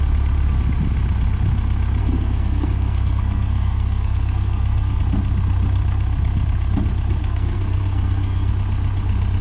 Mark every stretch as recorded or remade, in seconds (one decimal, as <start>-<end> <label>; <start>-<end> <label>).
0.0-2.0 recorded; 2.0-5.0 remade; 5.0-7.2 recorded; 7.2-8.5 remade; 8.5-9.4 recorded